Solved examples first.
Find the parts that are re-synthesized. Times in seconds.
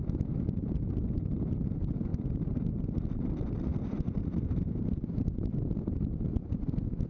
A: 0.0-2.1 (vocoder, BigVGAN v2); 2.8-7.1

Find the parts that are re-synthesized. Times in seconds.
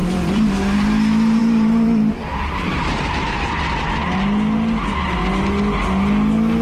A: 0.0-0.5 (vocoder, BigVGAN v2); 1.4-3.5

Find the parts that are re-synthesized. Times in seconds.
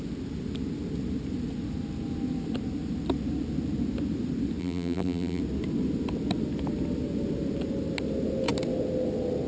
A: 4.6-5.4 (vocoder, BigVGAN v2)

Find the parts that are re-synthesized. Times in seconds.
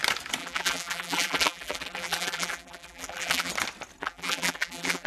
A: 0.4-3.5 (vocoder, BigVGAN v2); 4.0-5.1